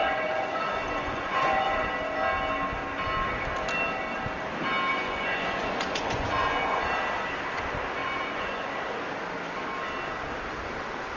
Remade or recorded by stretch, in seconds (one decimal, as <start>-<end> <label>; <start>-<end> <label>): 0.0-1.9 remade; 1.9-4.9 recorded; 4.9-6.8 remade; 6.8-8.0 recorded; 8.0-8.7 remade; 8.7-11.2 recorded